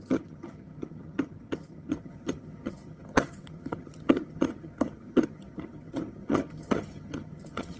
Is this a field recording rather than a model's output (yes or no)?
no